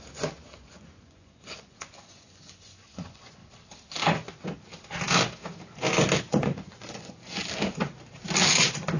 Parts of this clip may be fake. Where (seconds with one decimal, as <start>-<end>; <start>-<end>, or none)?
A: 0.0-3.4; 6.3-7.4; 8.5-9.0